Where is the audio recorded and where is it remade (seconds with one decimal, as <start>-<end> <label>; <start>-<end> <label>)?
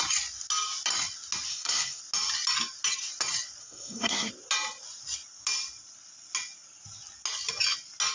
0.0-1.5 recorded; 1.5-2.0 remade; 2.0-3.6 recorded; 3.6-4.3 remade; 4.3-8.1 recorded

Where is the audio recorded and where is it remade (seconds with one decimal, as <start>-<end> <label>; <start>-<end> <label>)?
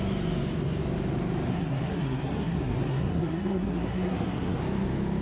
0.0-1.5 recorded; 1.5-4.6 remade; 4.6-5.2 recorded